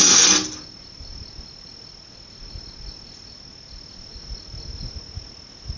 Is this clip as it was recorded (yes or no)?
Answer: yes